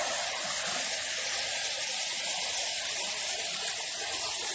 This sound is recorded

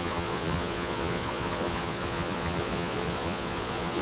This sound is remade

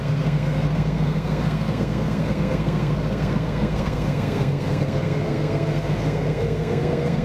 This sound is remade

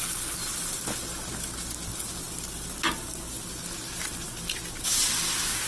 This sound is recorded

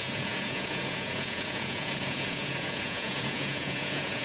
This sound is remade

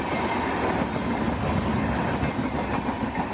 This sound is recorded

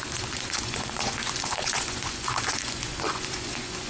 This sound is remade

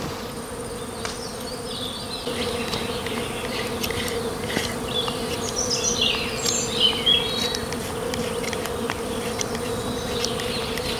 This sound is recorded